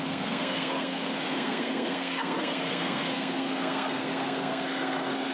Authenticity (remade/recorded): remade